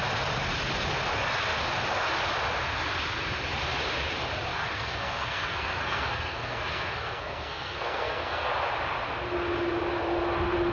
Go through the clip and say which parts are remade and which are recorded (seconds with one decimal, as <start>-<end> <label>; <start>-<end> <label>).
0.0-4.5 recorded; 4.5-8.5 remade; 8.5-10.7 recorded